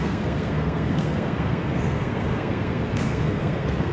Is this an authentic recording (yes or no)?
no